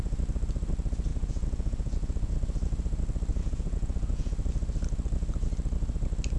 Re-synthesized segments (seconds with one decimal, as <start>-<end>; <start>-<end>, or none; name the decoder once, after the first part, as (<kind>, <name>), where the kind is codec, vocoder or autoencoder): 1.1-2.3 (vocoder, Vocos); 3.3-4.3